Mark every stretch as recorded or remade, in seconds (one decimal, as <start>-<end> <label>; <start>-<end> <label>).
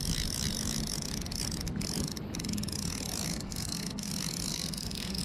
0.0-3.3 recorded; 3.3-4.1 remade; 4.1-4.5 recorded; 4.5-5.2 remade